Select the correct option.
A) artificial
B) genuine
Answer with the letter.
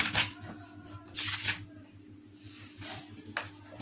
B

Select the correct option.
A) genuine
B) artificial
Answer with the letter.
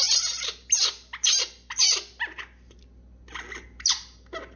A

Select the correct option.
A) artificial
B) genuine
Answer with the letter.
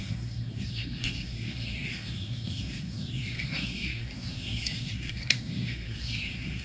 A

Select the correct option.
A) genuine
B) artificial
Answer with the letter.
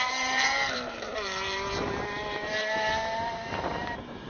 B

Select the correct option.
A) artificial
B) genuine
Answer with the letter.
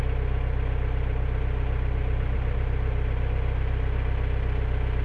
B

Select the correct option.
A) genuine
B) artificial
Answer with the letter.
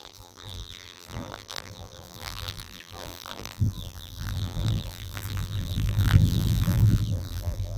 B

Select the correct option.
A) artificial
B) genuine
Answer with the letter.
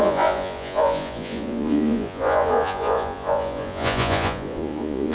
A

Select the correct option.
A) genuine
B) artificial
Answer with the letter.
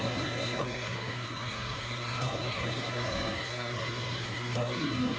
B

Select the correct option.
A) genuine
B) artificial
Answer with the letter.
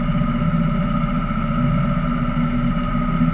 A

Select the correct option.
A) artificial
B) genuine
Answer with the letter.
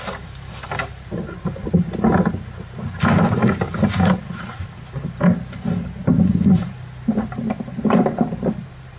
B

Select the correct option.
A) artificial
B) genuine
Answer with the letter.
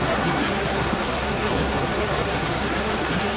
A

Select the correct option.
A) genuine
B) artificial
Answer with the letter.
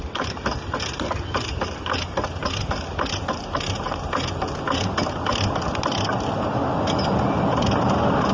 A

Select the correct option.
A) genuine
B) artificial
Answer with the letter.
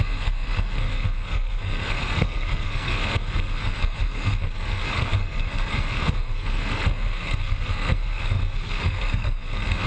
B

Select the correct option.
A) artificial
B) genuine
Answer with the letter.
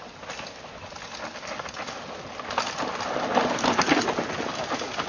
B